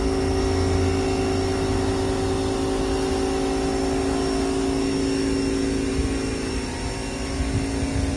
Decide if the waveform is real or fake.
real